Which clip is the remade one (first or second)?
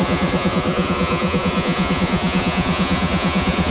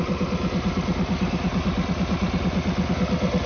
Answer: first